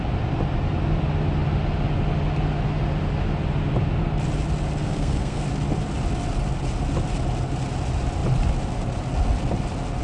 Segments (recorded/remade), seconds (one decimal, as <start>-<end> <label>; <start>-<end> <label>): 0.0-4.8 recorded; 4.8-5.4 remade; 5.4-10.0 recorded